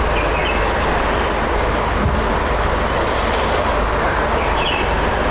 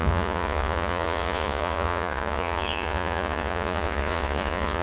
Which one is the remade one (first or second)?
second